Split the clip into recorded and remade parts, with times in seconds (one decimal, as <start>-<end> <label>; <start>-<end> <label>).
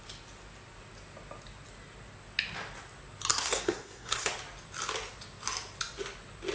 0.0-3.3 recorded; 3.3-4.3 remade; 4.3-6.5 recorded